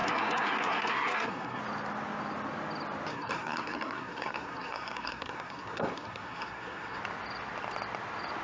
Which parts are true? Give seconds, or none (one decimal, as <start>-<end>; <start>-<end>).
1.6-3.1; 7.0-8.4